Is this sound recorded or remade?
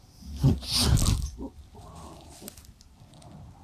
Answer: recorded